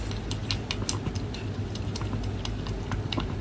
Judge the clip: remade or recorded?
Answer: recorded